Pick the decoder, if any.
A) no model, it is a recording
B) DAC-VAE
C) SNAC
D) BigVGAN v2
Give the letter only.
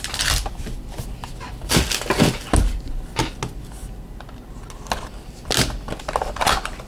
A